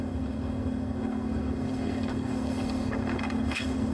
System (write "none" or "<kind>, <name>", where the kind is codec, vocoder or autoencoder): codec, SNAC